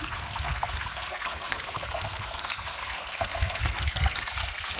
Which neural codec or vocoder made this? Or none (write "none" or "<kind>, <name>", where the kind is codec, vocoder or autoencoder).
codec, SNAC